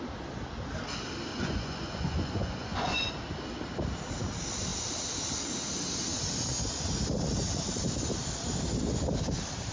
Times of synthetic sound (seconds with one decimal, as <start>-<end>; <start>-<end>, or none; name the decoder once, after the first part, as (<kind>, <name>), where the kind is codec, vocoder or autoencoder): 1.3-3.1 (vocoder, Vocos)